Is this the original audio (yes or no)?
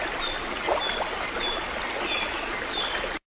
yes